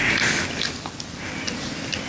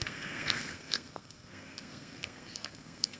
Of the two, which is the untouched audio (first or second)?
first